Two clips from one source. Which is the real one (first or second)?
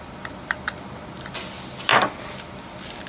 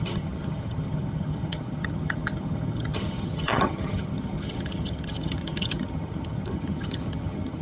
first